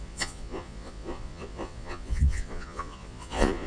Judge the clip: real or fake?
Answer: fake